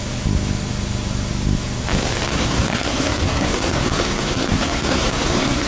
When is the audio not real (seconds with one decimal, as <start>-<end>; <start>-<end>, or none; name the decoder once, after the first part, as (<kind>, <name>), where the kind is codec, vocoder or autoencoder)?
2.3-5.7 (codec, SNAC)